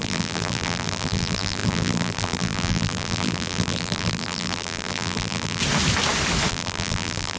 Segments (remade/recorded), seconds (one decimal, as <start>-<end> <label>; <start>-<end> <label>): 0.0-5.6 remade; 5.6-6.5 recorded; 6.5-7.4 remade

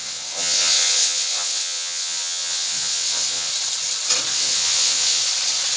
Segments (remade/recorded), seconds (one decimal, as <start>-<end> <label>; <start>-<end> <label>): 0.0-3.5 remade; 3.5-4.3 recorded; 4.3-5.2 remade; 5.2-5.8 recorded

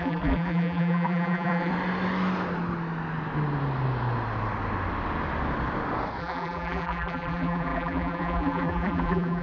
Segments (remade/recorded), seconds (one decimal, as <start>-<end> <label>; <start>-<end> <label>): 0.0-1.7 remade; 1.7-6.2 recorded; 6.2-9.4 remade

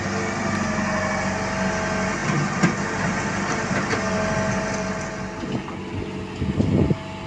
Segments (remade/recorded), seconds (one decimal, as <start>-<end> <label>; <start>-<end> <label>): 0.0-7.3 recorded